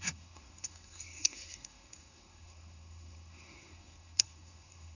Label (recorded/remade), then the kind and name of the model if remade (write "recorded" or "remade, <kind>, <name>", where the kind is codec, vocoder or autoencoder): remade, codec, SNAC